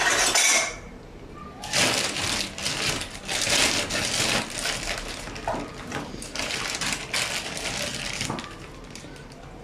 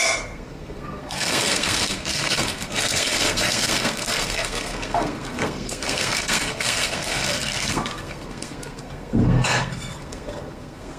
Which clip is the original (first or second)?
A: first